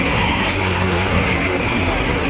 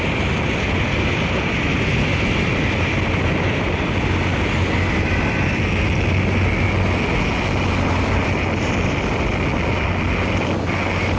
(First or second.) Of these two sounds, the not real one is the first